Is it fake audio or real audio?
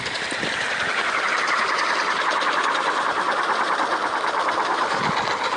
real